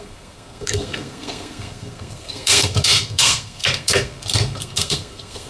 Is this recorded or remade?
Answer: remade